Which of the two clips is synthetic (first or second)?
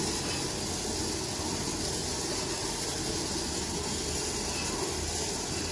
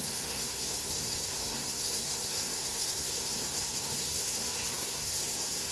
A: second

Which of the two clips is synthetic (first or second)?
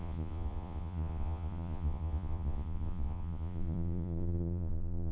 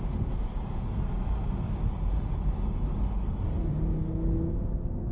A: first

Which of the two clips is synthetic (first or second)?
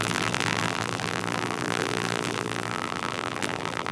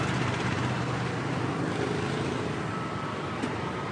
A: first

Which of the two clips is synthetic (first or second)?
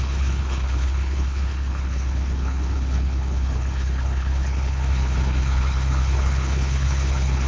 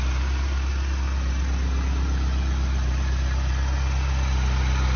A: first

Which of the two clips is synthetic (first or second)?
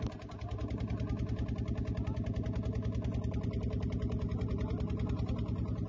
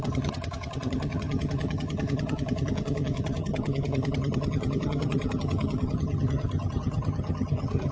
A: second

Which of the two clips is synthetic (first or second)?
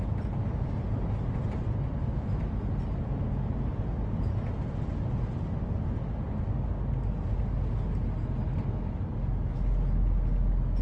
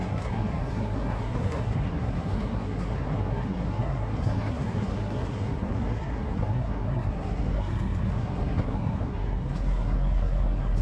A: second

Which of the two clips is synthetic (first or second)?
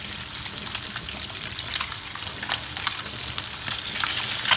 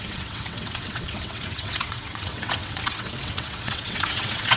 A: second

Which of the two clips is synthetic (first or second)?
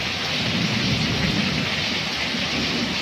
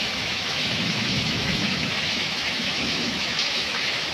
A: second